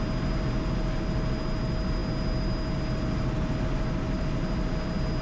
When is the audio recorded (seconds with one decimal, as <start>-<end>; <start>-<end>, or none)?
0.0-5.2